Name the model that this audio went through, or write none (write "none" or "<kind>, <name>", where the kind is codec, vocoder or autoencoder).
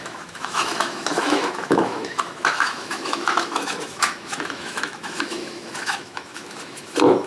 autoencoder, DAC-VAE